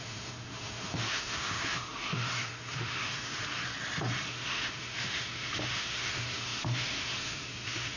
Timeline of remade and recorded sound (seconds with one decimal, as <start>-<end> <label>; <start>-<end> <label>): 0.0-3.4 remade; 3.4-4.3 recorded; 4.3-8.0 remade